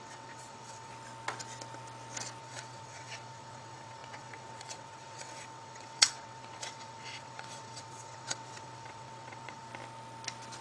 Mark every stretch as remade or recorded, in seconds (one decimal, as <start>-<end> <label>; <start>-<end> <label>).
0.0-0.9 remade; 0.9-2.4 recorded; 2.4-9.7 remade; 9.7-10.6 recorded